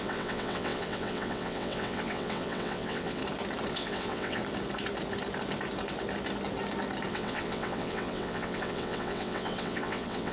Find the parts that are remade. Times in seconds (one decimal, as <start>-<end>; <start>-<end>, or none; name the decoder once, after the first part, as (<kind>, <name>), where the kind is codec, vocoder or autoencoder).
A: 0.0-3.2 (vocoder, WaveNeXt); 3.7-4.4; 7.1-10.3